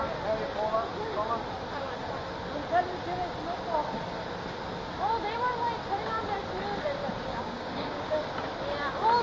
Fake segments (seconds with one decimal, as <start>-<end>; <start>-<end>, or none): 7.3-8.1